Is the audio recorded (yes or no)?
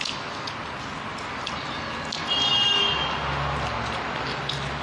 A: yes